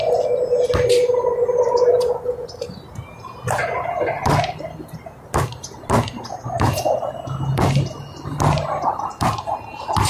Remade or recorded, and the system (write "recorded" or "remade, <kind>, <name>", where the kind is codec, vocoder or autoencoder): recorded